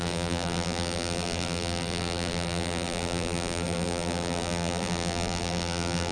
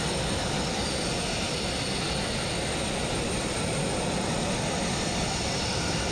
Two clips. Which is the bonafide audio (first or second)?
second